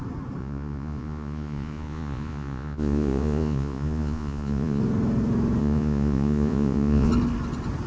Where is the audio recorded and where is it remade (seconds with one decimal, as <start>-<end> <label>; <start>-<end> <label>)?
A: 0.0-0.4 recorded; 0.4-4.8 remade; 4.8-5.6 recorded; 5.6-7.1 remade; 7.1-7.9 recorded